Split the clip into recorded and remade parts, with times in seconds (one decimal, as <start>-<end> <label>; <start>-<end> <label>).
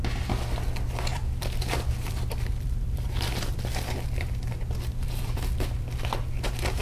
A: 0.0-1.1 recorded; 1.1-5.2 remade; 5.2-6.8 recorded